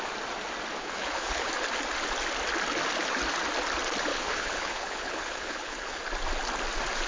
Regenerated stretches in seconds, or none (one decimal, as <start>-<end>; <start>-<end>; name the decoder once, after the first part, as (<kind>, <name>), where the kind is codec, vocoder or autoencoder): 0.8-1.5 (codec, HILCodec); 4.1-6.0